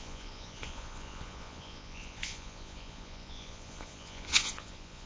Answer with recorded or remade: remade